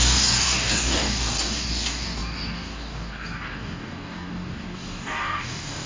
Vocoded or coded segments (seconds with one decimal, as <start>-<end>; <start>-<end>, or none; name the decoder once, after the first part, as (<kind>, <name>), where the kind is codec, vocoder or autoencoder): 0.0-5.9 (codec, DAC)